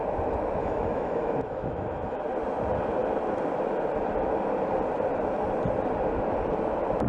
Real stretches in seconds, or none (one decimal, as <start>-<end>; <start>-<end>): 0.0-0.6; 2.2-7.1